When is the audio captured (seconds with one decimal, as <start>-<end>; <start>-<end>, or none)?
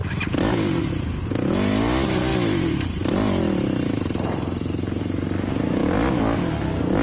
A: 0.0-7.0